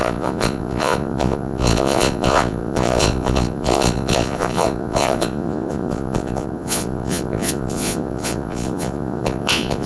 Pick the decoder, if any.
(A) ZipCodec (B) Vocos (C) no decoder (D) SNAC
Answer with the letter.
B